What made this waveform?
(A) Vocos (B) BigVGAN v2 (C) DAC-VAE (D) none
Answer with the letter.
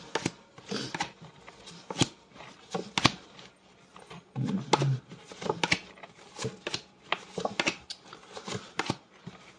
D